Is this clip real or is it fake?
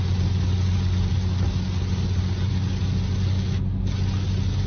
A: real